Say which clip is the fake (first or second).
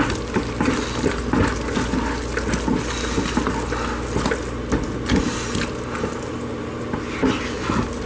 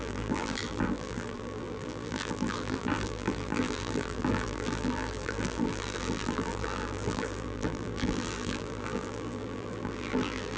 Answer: second